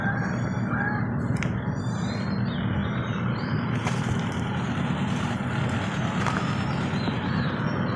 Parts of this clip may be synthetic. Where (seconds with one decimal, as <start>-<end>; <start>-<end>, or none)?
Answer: 2.8-5.6; 6.0-8.0